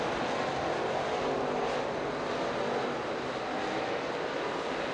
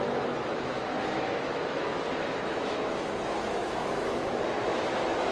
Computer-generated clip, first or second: second